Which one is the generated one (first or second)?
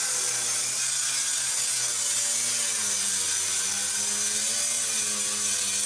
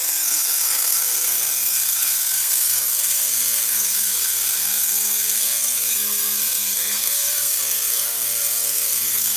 second